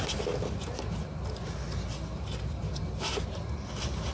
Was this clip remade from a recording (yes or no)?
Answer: no